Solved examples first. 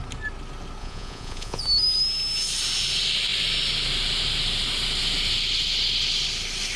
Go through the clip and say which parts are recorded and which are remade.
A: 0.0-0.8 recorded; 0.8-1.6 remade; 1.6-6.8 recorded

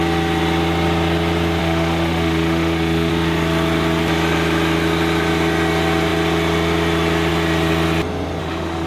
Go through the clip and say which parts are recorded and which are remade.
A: 0.0-1.6 recorded; 1.6-3.1 remade; 3.1-8.4 recorded; 8.4-8.9 remade

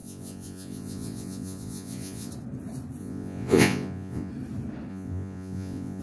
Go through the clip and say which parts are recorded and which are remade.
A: 0.0-2.3 remade; 2.3-3.0 recorded; 3.0-4.3 remade; 4.3-4.9 recorded; 4.9-6.0 remade

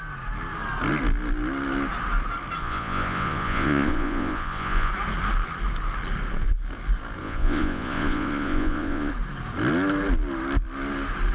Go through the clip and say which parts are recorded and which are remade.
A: 0.0-2.6 recorded; 2.6-4.9 remade; 4.9-7.2 recorded; 7.2-9.1 remade; 9.1-11.3 recorded